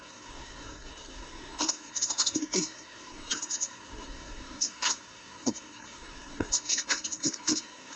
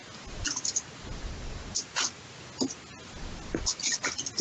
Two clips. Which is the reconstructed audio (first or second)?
first